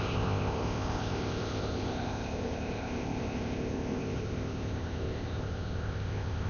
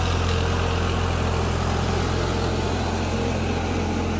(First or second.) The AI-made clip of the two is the first